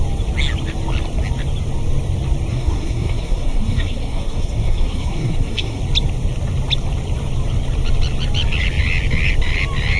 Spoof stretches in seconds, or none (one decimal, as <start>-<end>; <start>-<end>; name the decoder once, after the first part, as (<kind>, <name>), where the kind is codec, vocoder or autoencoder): 2.5-5.8 (codec, SNAC)